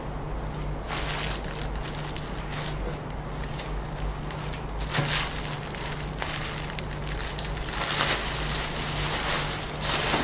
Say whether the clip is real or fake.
real